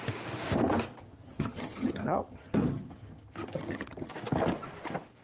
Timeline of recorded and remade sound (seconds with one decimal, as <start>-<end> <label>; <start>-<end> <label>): 0.0-1.0 recorded; 1.0-4.1 remade; 4.1-5.2 recorded